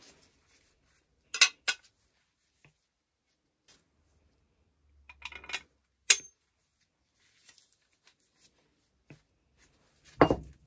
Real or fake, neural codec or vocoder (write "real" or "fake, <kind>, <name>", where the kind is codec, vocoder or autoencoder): real